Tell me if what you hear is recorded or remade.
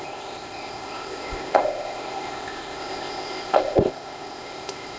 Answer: remade